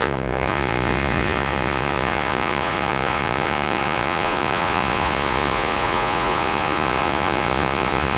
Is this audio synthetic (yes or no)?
yes